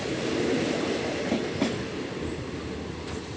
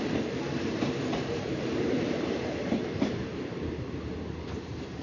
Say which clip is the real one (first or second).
first